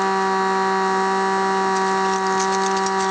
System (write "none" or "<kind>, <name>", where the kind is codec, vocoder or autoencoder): none